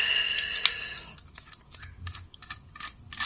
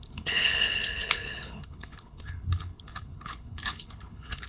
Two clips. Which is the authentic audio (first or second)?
first